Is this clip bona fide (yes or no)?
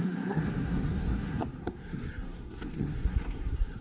no